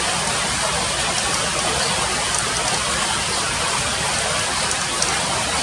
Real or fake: real